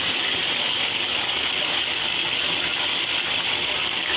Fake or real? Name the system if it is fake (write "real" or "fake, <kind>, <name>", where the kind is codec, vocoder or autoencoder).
fake, vocoder, BigVGAN v2